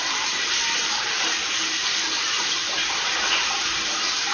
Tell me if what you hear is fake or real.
fake